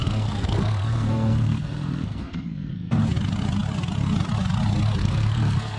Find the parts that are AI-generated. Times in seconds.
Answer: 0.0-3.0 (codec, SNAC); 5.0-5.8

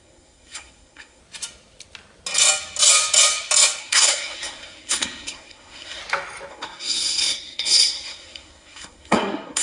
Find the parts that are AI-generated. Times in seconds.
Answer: 0.0-1.2 (codec, SNAC); 3.8-6.0; 6.5-9.6

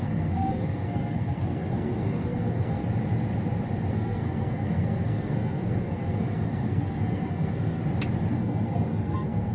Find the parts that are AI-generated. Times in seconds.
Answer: 0.0-2.8 (codec, SNAC); 3.9-7.8; 8.3-9.5

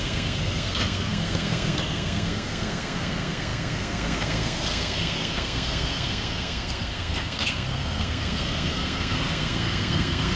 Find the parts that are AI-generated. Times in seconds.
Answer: 0.0-10.4 (codec, SNAC)

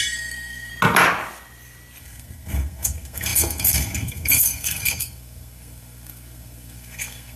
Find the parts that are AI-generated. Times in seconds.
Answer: 0.0-0.7 (codec, SNAC); 2.0-7.4

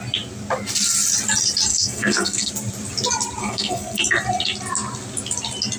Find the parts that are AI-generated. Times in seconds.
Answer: 1.7-2.5 (codec, SNAC); 3.4-4.0